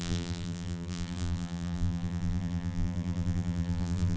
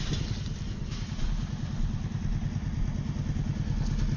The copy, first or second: first